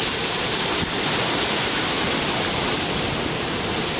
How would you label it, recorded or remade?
remade